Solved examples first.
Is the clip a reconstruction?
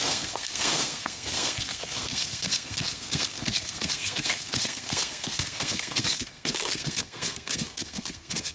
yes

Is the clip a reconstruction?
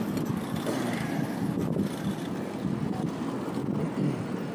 no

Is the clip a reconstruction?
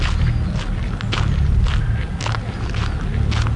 no